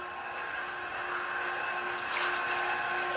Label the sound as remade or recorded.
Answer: recorded